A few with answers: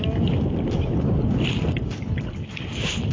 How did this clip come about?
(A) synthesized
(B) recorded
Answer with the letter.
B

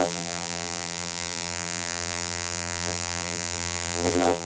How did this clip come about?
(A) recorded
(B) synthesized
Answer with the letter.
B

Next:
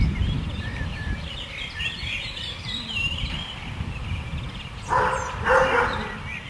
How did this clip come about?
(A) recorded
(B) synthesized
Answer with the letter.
B